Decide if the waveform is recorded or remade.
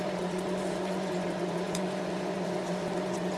remade